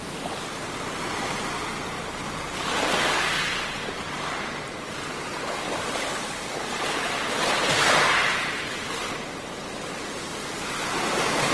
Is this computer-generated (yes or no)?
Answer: no